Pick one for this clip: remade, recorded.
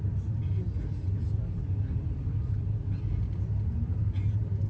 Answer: recorded